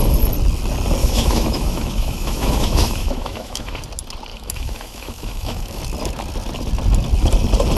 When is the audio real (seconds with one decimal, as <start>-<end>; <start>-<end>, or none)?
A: 0.0-1.0; 3.8-4.3; 5.8-7.8

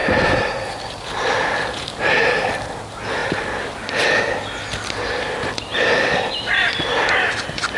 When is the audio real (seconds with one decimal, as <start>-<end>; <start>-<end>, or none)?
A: 2.0-5.7; 6.3-7.8

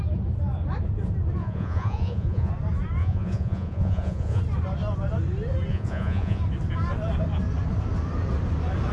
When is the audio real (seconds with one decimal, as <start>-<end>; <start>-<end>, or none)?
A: 0.0-1.4; 2.5-3.0; 4.4-5.7; 6.4-8.9

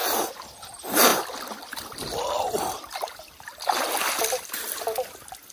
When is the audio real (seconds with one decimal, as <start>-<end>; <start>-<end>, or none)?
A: 0.0-1.1; 4.4-5.5

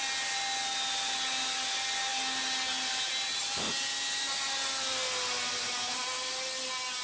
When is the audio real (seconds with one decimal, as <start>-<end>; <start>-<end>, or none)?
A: 0.0-7.0

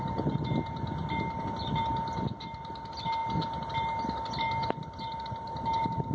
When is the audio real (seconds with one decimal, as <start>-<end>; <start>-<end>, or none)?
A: 0.0-6.1